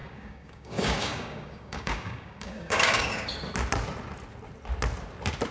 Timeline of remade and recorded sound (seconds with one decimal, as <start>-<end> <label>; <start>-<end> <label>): 0.0-3.3 remade; 3.3-5.5 recorded